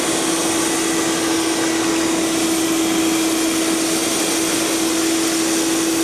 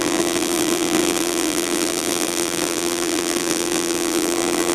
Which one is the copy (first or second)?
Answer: second